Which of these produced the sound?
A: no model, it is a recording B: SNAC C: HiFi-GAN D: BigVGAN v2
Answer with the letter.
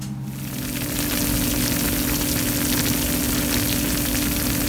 A